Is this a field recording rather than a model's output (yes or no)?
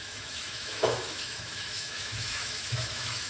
no